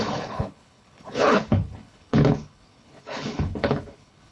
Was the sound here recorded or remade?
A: remade